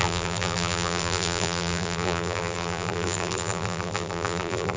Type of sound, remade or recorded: remade